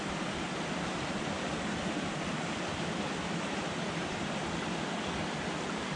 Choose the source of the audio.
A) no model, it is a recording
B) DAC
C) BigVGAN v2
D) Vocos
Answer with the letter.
A